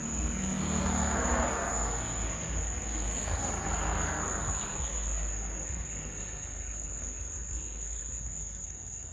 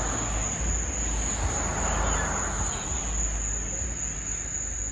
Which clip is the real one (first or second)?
second